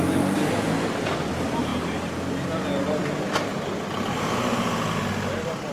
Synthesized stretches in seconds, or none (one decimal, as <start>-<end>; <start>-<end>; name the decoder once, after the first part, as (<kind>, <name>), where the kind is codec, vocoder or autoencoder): none